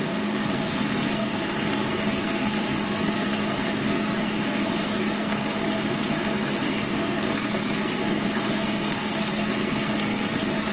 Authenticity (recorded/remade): remade